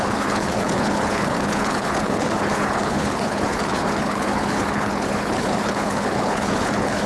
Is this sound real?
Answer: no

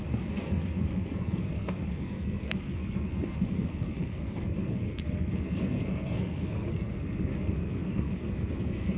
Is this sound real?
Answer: no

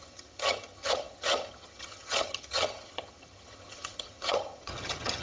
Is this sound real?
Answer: no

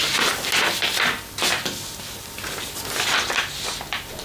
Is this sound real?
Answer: yes